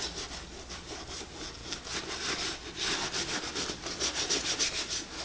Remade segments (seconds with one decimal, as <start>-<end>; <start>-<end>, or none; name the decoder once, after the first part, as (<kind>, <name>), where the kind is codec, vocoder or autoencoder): none